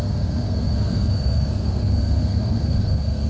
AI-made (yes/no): yes